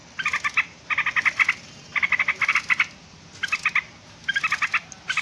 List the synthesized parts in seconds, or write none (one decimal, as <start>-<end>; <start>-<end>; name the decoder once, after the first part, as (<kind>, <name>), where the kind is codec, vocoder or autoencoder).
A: none